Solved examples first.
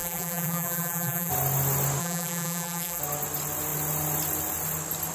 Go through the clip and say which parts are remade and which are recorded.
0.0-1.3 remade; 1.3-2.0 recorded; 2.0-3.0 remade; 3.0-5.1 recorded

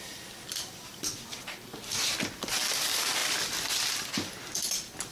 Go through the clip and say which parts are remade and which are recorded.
0.0-5.1 recorded

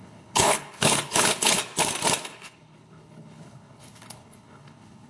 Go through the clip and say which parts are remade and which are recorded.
0.0-1.6 remade; 1.6-2.2 recorded; 2.2-5.1 remade

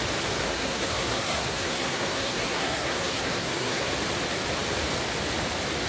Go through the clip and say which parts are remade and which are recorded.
0.0-0.4 recorded; 0.4-3.9 remade; 3.9-5.9 recorded